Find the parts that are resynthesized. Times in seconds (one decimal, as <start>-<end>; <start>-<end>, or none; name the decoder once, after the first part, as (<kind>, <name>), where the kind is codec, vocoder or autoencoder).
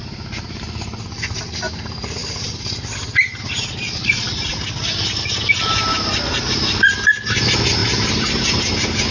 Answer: 7.8-9.1 (vocoder, BigVGAN v2)